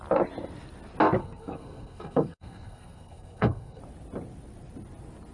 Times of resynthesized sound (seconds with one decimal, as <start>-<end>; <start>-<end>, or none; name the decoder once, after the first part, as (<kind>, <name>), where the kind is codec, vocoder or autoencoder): 1.2-3.8 (codec, SNAC)